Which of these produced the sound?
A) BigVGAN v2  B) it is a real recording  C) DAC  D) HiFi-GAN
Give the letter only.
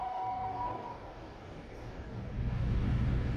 C